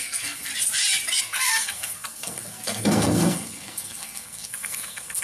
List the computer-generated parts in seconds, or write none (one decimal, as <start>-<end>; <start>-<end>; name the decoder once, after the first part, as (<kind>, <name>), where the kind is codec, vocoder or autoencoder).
0.0-0.5 (codec, SNAC); 1.2-5.2